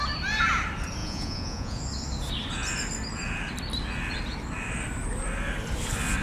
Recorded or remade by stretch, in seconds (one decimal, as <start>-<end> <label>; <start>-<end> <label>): 0.0-1.0 recorded; 1.0-1.8 remade; 1.8-6.2 recorded